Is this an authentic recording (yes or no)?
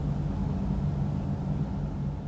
yes